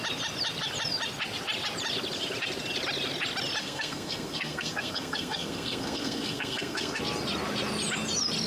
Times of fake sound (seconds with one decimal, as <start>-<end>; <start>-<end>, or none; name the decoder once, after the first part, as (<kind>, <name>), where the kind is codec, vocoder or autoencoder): 3.6-7.0 (codec, SNAC)